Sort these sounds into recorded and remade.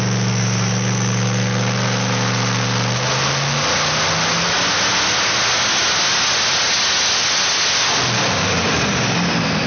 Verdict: recorded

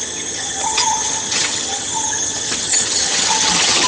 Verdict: remade